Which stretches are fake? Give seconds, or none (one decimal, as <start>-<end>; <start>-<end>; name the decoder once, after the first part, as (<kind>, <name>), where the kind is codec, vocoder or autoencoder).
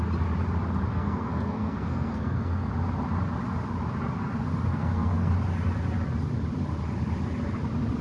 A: 0.9-2.7 (codec, SNAC); 4.7-5.3